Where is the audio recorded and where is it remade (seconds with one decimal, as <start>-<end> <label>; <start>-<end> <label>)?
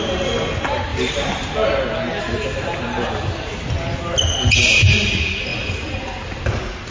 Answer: 0.0-6.9 recorded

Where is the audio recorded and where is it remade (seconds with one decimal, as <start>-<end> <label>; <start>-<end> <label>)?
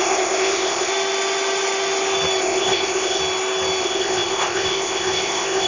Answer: 0.0-0.9 remade; 0.9-2.4 recorded; 2.4-3.2 remade; 3.2-3.8 recorded; 3.8-5.7 remade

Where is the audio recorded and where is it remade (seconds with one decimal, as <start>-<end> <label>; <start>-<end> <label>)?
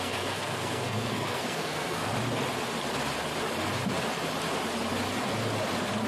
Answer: 0.0-2.1 remade; 2.1-6.1 recorded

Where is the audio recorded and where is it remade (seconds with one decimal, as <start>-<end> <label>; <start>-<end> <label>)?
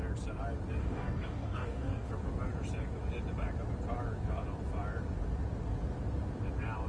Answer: 0.0-0.8 recorded; 0.8-2.1 remade; 2.1-6.9 recorded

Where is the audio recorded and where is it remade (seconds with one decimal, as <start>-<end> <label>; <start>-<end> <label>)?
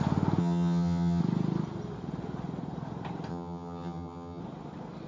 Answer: 0.0-0.4 recorded; 0.4-1.2 remade; 1.2-3.3 recorded; 3.3-4.4 remade; 4.4-5.1 recorded